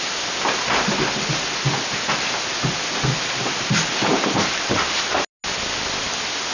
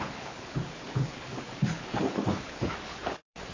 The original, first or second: first